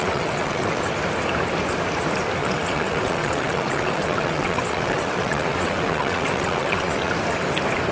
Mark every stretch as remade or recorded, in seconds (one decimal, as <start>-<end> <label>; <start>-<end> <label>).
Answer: 0.0-0.8 remade; 0.8-2.4 recorded; 2.4-7.1 remade; 7.1-7.9 recorded